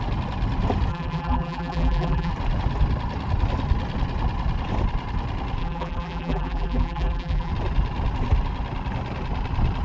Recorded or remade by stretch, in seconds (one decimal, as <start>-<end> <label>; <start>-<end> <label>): 0.0-0.9 recorded; 0.9-2.3 remade; 2.3-5.6 recorded; 5.6-7.5 remade; 7.5-9.8 recorded